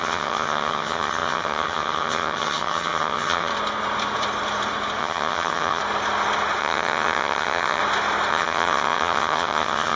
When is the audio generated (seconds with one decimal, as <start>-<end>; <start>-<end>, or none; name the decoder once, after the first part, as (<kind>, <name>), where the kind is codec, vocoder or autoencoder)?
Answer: 0.0-3.5 (vocoder, HiFi-GAN); 5.0-5.8; 6.6-7.8; 8.3-10.0